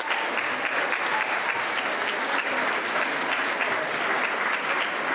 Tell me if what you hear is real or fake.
real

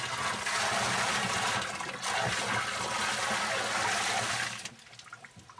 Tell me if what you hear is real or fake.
real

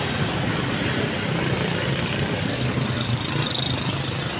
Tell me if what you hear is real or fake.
real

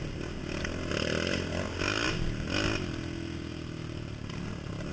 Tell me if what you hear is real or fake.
real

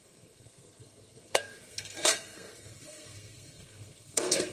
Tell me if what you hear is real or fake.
fake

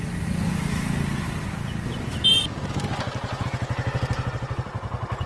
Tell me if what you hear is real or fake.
real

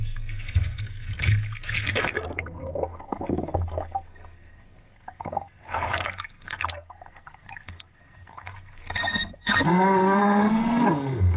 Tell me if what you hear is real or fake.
fake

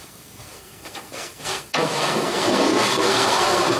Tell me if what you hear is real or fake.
fake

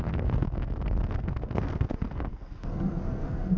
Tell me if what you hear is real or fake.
fake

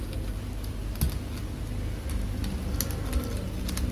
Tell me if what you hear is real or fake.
real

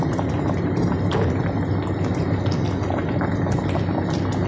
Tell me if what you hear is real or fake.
real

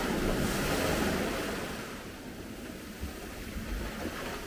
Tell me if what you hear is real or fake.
real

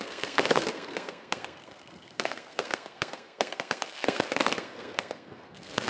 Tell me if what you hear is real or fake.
fake